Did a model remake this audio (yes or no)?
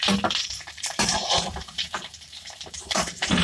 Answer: yes